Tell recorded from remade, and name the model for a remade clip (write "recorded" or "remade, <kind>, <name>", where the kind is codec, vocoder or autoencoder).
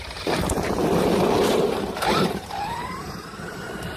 remade, vocoder, BigVGAN v2